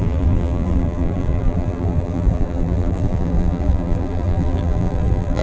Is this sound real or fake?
fake